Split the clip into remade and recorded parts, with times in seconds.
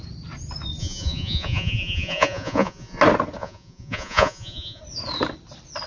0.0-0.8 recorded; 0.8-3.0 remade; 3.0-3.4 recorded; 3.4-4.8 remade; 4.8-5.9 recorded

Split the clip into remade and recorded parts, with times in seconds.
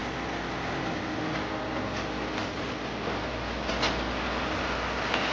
0.0-5.3 recorded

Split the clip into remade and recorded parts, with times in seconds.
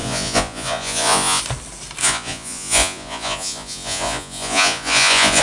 0.0-1.4 remade; 1.4-2.0 recorded; 2.0-5.4 remade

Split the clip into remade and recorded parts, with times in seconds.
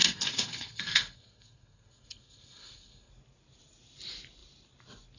0.0-3.1 remade; 3.1-5.2 recorded